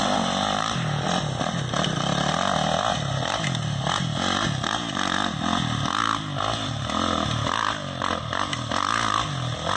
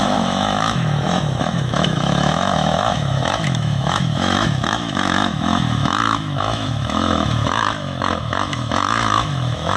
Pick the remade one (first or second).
second